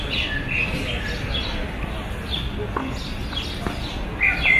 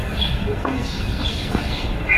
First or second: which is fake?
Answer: second